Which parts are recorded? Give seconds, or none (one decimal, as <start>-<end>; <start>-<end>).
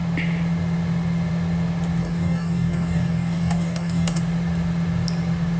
0.0-2.0; 4.2-5.6